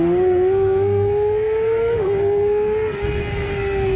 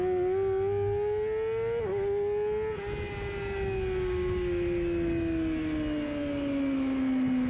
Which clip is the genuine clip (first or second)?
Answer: second